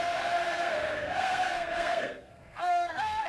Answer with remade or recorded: remade